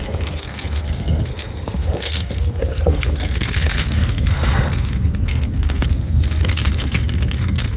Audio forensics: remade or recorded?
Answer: remade